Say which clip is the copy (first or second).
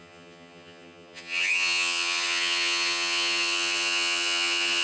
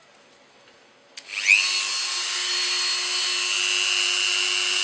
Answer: first